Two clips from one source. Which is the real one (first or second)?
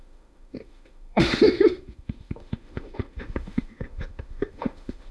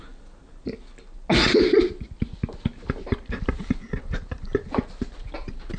second